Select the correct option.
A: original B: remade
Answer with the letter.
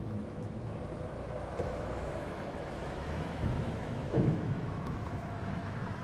B